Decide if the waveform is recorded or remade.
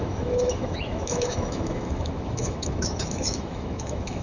remade